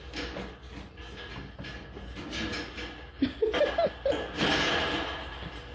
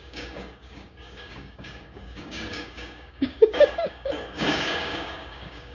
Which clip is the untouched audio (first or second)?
first